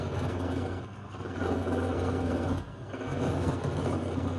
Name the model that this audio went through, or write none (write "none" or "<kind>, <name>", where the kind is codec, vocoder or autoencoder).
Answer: codec, SNAC